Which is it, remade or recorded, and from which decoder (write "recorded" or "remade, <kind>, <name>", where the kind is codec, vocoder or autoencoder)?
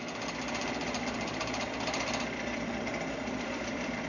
remade, vocoder, BigVGAN v2